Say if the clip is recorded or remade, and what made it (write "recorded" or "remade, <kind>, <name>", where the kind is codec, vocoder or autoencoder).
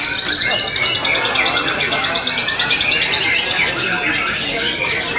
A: recorded